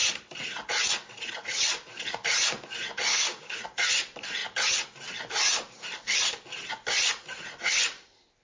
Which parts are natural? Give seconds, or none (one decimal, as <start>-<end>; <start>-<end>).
0.0-3.1; 3.6-8.4